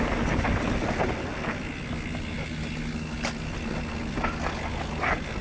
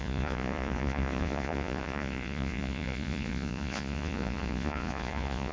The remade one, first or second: second